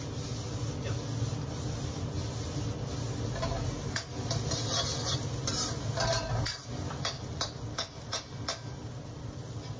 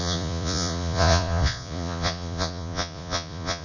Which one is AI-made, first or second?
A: second